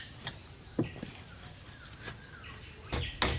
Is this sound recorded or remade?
recorded